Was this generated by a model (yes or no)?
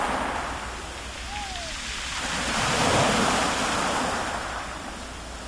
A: yes